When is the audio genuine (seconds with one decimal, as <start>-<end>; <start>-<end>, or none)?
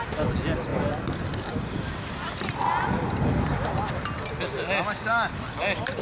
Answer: 0.0-6.0